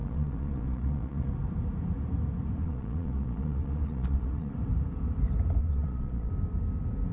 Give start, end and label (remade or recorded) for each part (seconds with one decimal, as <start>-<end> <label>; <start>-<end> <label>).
0.0-1.3 remade; 1.3-2.6 recorded; 2.6-4.5 remade; 4.5-5.6 recorded; 5.6-6.3 remade; 6.3-7.1 recorded